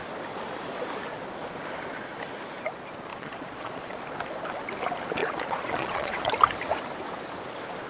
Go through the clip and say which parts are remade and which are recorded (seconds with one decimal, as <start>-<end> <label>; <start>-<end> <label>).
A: 0.0-3.1 recorded; 3.1-4.0 remade; 4.0-5.2 recorded; 5.2-6.3 remade; 6.3-7.9 recorded